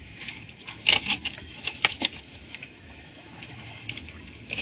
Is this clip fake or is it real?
fake